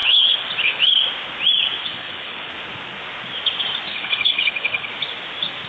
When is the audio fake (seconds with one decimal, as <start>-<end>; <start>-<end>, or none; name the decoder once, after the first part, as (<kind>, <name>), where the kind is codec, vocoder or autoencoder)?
0.0-1.0 (codec, HILCodec); 1.8-2.5; 3.9-4.9